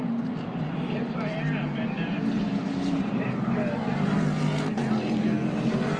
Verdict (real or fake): fake